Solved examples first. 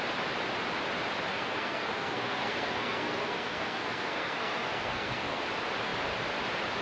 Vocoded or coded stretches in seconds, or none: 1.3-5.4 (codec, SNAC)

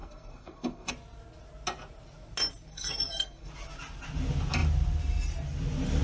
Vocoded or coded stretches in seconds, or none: 0.0-0.9 (codec, SNAC); 2.7-3.5

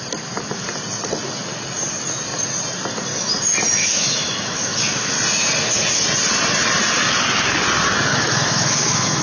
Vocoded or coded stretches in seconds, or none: 3.8-5.1 (autoencoder, DAC-VAE); 8.1-9.2

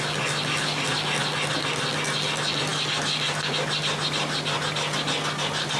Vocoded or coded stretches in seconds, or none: none

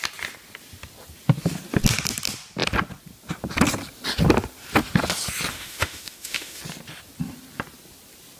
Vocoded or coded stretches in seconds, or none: 5.5-6.6 (autoencoder, DAC-VAE)